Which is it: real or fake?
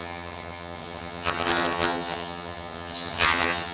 fake